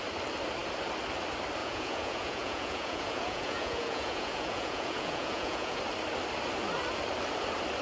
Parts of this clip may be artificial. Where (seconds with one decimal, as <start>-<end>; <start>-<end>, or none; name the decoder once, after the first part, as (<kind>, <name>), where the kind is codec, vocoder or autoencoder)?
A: 1.6-5.8 (vocoder, Vocos)